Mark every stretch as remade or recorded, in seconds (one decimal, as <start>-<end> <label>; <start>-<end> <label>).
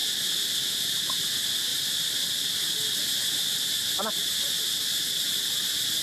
0.0-1.7 recorded; 1.7-4.0 remade; 4.0-6.0 recorded